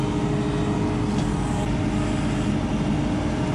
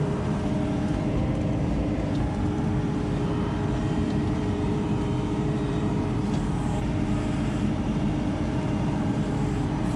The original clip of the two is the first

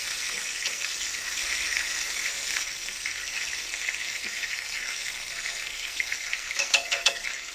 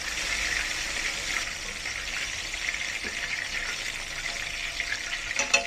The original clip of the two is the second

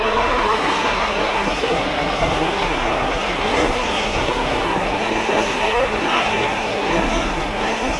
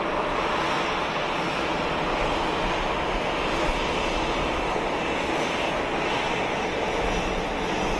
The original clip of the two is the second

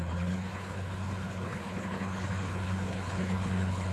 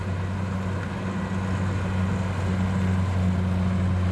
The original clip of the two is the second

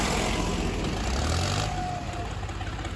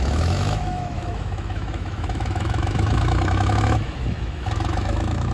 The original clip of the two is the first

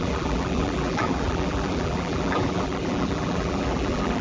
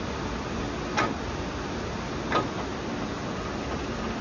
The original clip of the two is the second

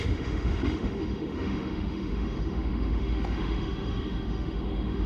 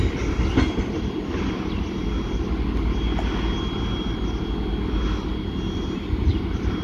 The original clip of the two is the second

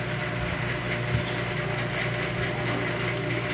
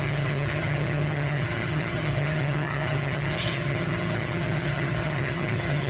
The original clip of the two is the first